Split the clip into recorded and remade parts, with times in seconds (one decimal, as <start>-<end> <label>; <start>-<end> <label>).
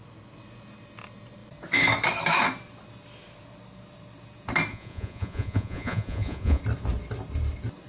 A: 0.0-4.7 recorded; 4.7-6.6 remade; 6.6-7.9 recorded